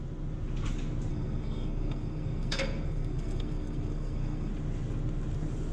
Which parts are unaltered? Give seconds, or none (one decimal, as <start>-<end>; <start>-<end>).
0.0-1.1; 4.5-5.7